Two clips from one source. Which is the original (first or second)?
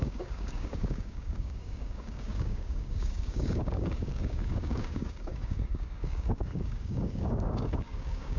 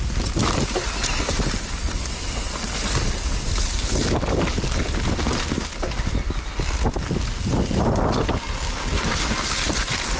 second